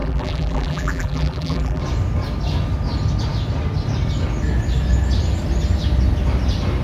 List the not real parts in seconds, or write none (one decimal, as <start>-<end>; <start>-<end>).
0.0-1.8